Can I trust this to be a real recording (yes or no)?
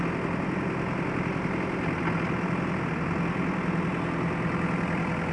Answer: yes